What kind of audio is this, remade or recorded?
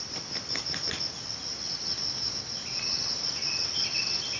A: recorded